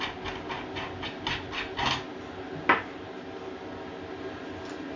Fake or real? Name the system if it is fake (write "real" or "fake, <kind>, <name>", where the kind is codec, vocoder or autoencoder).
real